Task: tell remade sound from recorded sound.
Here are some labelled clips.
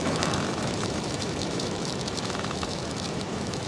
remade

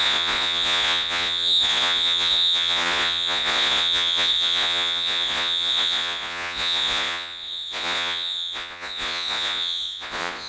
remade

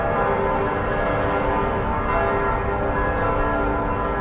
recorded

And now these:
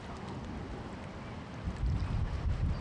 recorded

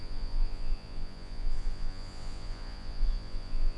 remade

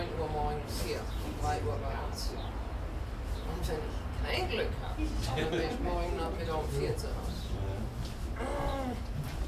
recorded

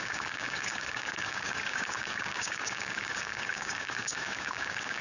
remade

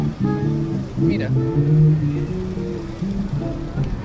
recorded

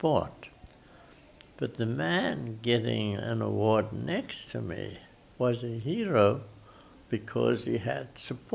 recorded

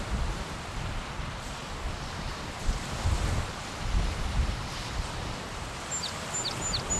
recorded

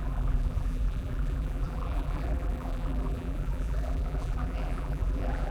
remade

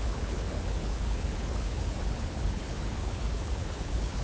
remade